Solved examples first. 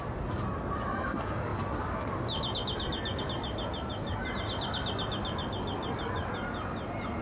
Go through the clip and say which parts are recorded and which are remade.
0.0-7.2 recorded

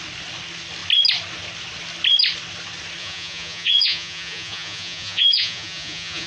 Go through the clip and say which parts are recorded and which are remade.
0.0-3.0 recorded; 3.0-6.3 remade

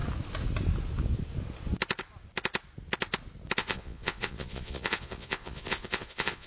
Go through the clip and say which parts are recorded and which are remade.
0.0-3.6 recorded; 3.6-6.5 remade

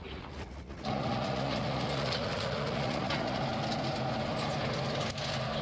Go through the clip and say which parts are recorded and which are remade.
0.0-3.4 remade; 3.4-5.6 recorded

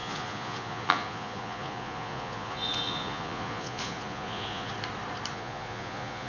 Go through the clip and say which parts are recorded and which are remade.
0.0-4.7 remade; 4.7-5.3 recorded; 5.3-6.3 remade

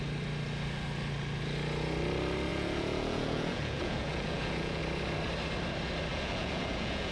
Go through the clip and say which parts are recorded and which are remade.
0.0-2.5 recorded; 2.5-4.8 remade; 4.8-6.1 recorded; 6.1-7.1 remade

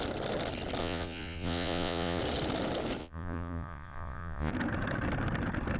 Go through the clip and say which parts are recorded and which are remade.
0.0-0.8 recorded; 0.8-2.2 remade; 2.2-3.0 recorded; 3.0-4.5 remade; 4.5-5.8 recorded